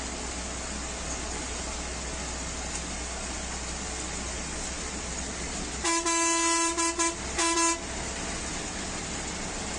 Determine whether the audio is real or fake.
real